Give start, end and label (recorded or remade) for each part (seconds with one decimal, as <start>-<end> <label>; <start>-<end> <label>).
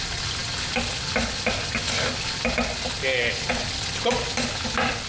0.0-5.1 recorded